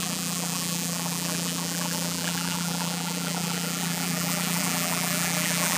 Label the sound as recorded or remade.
remade